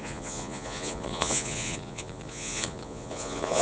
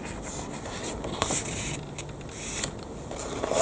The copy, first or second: first